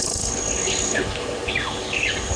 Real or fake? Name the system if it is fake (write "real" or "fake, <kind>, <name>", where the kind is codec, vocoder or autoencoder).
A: real